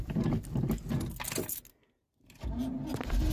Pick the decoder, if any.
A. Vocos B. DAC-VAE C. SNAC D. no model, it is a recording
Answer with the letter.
D